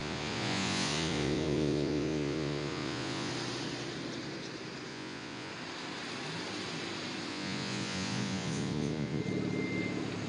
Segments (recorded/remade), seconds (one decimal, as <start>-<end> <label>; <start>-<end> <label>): 0.0-3.3 remade; 3.3-4.9 recorded; 4.9-5.5 remade; 5.5-7.3 recorded; 7.3-9.2 remade; 9.2-10.3 recorded